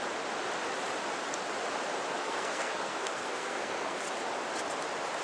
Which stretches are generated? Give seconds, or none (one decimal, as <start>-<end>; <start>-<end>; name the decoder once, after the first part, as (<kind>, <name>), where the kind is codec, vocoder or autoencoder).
2.1-4.0 (codec, SNAC)